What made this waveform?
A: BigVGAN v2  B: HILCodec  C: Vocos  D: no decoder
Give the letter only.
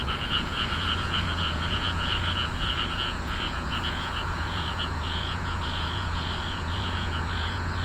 C